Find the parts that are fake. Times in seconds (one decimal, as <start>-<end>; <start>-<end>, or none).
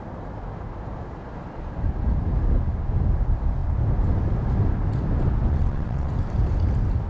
5.5-6.1